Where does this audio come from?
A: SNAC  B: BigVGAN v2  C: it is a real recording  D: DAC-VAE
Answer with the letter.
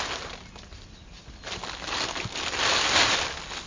C